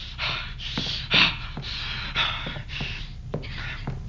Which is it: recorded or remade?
recorded